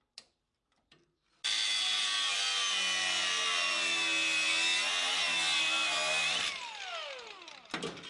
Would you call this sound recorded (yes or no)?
yes